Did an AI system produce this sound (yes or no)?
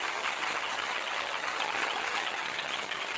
yes